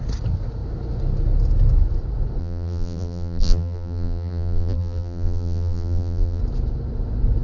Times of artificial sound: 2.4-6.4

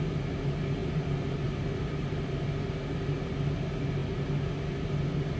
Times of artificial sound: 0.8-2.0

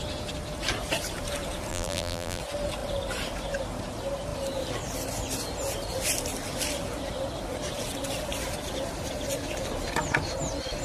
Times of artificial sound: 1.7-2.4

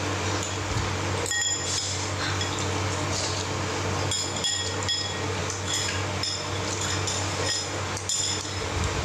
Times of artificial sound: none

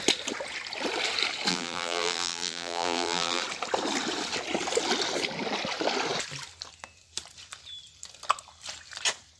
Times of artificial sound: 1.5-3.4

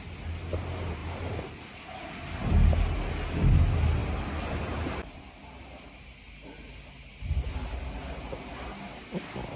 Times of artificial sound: 4.0-5.2